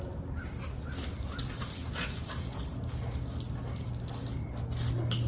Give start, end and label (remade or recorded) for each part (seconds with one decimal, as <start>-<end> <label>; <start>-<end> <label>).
0.0-5.3 recorded